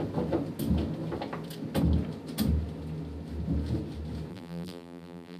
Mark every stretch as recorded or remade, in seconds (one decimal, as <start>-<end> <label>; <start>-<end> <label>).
0.0-4.3 recorded; 4.3-5.4 remade